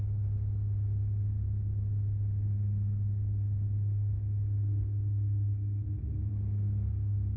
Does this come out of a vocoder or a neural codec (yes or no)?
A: no